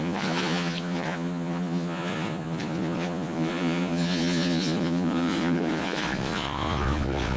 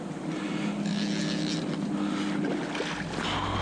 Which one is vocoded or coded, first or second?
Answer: first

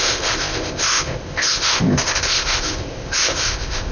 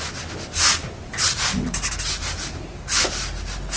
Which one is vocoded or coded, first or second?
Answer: first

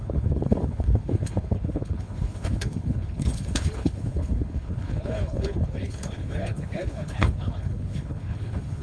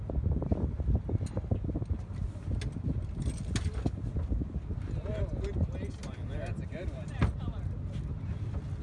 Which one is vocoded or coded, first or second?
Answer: first